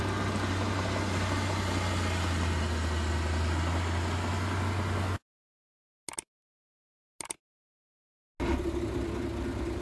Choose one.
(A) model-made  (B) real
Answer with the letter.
B